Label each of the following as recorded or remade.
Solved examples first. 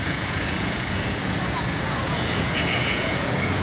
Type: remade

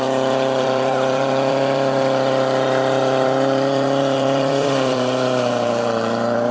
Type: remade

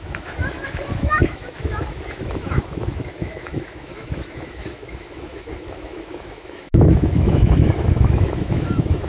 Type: remade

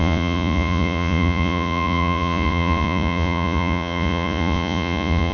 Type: remade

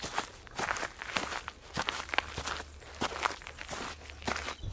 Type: recorded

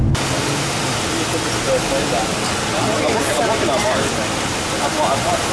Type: recorded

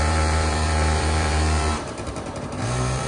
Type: remade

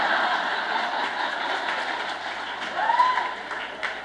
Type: recorded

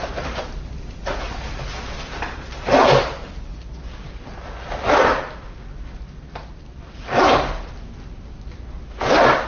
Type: remade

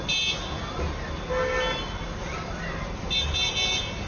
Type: recorded